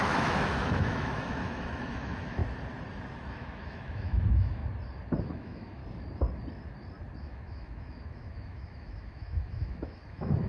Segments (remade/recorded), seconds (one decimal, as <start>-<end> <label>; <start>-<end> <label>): 0.0-2.4 remade; 2.4-3.3 recorded; 3.3-4.6 remade; 4.6-5.2 recorded; 5.2-5.8 remade; 5.8-7.2 recorded; 7.2-10.5 remade